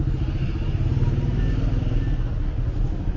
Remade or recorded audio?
recorded